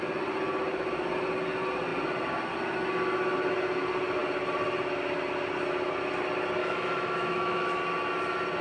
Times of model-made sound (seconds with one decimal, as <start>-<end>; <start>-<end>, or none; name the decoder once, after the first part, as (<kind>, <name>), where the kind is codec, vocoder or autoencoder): 6.6-7.8 (autoencoder, DAC-VAE)